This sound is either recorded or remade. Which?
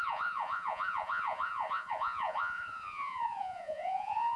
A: remade